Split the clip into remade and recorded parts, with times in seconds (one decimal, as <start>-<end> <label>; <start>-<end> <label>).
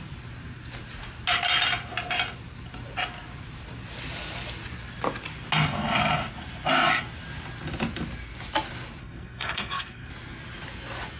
0.0-9.0 recorded; 9.0-10.1 remade; 10.1-11.2 recorded